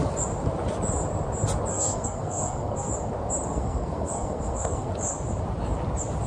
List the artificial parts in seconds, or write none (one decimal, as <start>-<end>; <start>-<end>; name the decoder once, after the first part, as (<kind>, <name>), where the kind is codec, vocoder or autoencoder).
1.7-2.9 (codec, SNAC); 3.5-4.9

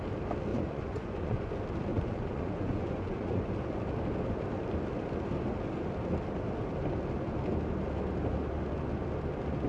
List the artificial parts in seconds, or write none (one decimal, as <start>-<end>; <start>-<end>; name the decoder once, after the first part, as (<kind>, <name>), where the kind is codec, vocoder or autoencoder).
0.5-1.5 (vocoder, Vocos); 1.9-3.5

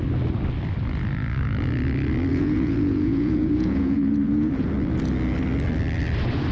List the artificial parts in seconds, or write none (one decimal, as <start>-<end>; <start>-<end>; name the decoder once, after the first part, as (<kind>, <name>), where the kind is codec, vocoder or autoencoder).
2.3-4.7 (vocoder, Vocos)

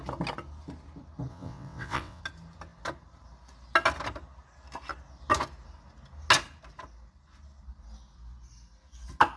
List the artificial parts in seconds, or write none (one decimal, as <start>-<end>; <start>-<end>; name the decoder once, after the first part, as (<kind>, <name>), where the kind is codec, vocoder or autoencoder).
1.3-2.2 (vocoder, WaveNeXt)